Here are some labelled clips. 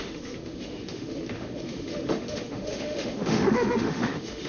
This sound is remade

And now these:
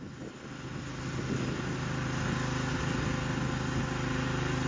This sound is recorded